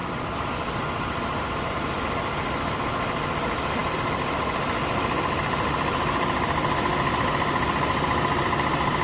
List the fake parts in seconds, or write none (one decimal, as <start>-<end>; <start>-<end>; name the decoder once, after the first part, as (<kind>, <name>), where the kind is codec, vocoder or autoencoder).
none